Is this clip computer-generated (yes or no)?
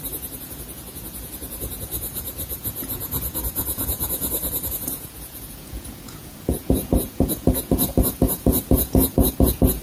yes